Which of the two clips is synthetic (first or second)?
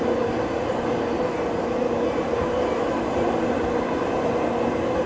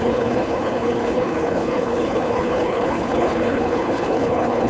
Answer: second